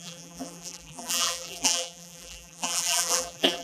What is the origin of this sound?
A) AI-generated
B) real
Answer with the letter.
A